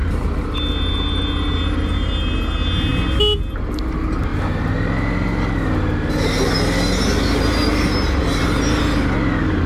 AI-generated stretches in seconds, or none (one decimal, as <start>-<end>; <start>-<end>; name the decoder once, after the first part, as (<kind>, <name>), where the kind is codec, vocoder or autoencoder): 0.0-0.5 (vocoder, BigVGAN v2)